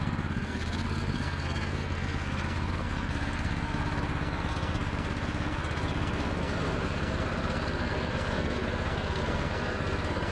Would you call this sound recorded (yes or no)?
no